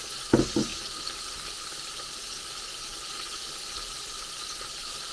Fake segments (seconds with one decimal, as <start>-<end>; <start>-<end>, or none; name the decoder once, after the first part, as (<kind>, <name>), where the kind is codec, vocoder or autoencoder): none